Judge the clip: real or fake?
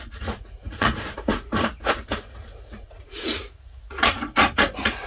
fake